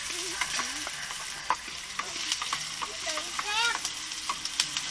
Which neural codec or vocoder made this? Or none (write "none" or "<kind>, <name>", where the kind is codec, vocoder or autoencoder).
none